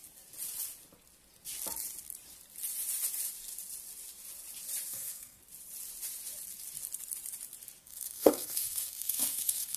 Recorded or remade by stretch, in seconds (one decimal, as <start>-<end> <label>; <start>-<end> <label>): 0.0-4.9 recorded; 4.9-5.4 remade; 5.4-7.8 recorded; 7.8-9.8 remade